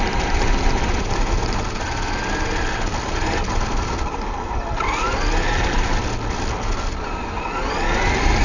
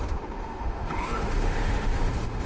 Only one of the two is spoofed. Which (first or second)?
second